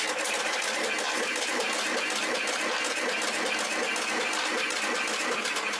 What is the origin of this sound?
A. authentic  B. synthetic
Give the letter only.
A